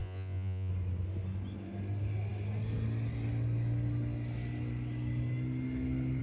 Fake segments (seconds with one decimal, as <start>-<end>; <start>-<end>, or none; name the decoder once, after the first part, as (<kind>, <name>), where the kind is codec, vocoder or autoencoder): 0.0-0.7 (vocoder, Vocos)